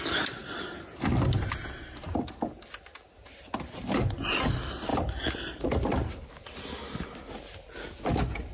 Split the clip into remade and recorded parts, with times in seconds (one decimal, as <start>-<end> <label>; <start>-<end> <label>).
0.0-4.9 recorded; 4.9-6.1 remade; 6.1-8.5 recorded